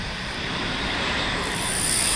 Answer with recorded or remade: remade